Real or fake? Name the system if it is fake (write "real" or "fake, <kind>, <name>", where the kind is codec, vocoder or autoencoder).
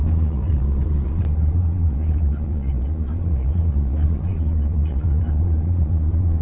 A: fake, vocoder, Vocos